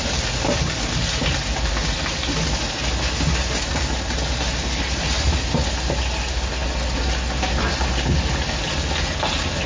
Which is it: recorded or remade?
recorded